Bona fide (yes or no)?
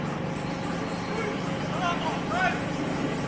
yes